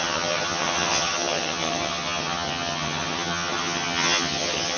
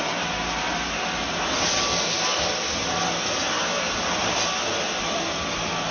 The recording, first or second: second